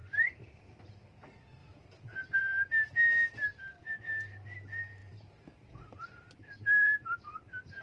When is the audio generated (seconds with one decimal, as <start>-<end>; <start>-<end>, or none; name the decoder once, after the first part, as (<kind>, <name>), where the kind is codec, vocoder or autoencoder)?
0.0-0.6 (vocoder, BigVGAN v2); 3.5-4.0; 5.0-7.8